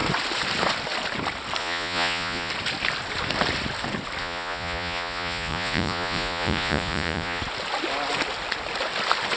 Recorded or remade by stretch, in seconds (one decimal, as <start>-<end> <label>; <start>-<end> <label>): 0.0-1.6 recorded; 1.6-2.5 remade; 2.5-4.2 recorded; 4.2-7.4 remade; 7.4-9.4 recorded